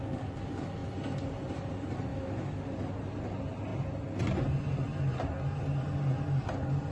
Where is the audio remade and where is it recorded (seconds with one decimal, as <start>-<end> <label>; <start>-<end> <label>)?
0.0-2.1 recorded; 2.1-2.6 remade; 2.6-6.9 recorded

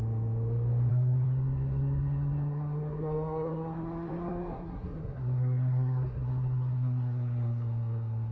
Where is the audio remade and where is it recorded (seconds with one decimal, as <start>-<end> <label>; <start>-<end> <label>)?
0.0-0.9 recorded; 0.9-8.3 remade

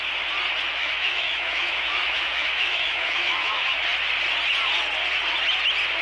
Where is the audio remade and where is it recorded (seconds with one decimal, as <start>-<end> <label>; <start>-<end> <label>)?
0.0-0.8 recorded; 0.8-3.8 remade; 3.8-6.0 recorded

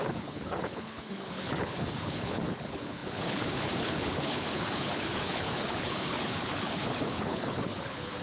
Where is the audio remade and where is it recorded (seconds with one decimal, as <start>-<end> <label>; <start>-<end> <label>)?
0.0-8.2 remade